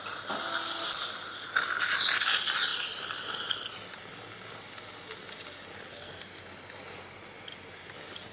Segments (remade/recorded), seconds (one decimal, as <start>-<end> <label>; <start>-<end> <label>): 0.0-5.9 recorded; 5.9-6.4 remade; 6.4-8.3 recorded